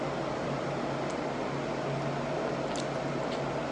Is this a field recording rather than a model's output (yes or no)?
yes